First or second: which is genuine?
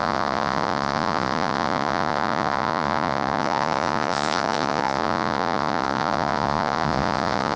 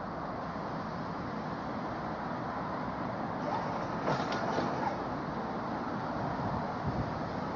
second